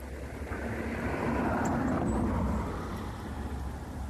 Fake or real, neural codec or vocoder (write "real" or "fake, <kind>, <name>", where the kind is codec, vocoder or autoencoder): real